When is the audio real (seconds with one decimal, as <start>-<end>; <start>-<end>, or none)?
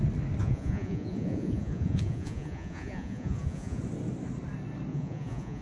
0.0-0.4; 3.8-4.9